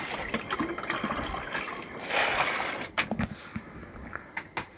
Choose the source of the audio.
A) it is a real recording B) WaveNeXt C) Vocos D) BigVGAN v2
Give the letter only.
A